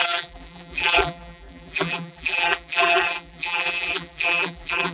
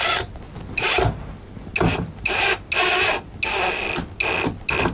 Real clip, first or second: second